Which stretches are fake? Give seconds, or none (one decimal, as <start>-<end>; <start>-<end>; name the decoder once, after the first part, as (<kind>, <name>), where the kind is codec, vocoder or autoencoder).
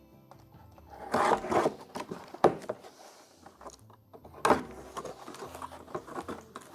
0.0-0.6 (vocoder, BigVGAN v2); 1.7-4.0; 5.9-6.7